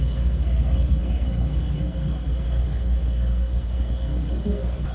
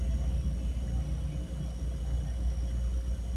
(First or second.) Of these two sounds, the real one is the second